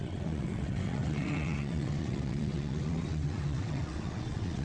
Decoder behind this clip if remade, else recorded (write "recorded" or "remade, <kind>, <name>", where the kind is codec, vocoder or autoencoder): remade, vocoder, WaveNeXt